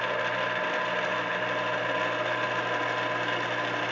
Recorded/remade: recorded